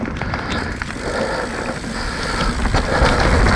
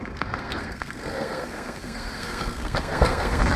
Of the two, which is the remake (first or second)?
second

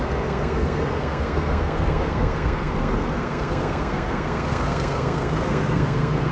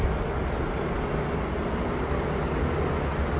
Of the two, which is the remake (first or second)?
first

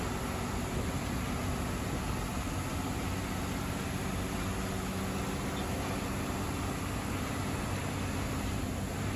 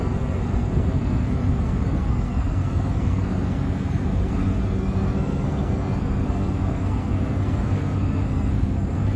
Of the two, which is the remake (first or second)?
second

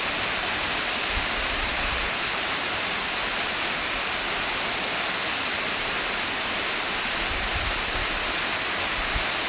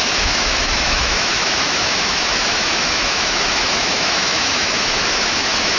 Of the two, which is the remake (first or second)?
second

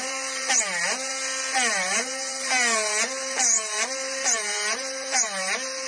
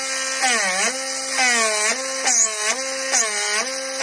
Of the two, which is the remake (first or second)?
first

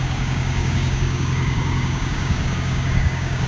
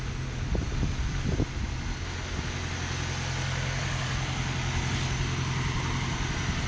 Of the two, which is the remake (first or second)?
first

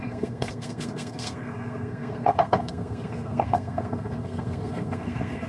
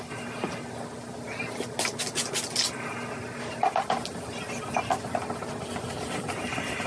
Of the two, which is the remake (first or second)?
first